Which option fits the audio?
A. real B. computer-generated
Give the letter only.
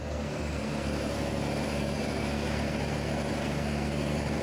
B